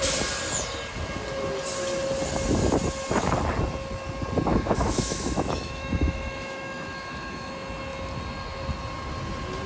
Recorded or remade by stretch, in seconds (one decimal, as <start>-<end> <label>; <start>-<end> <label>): 0.0-4.5 recorded; 4.5-7.5 remade; 7.5-9.7 recorded